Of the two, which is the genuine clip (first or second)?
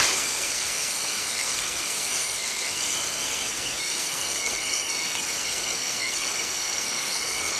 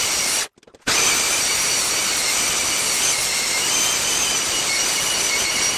second